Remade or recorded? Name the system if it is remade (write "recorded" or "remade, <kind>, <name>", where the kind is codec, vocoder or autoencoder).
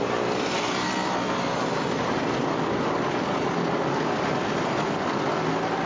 recorded